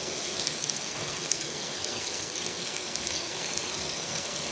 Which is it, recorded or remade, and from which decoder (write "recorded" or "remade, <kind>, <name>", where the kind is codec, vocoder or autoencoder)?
remade, codec, SNAC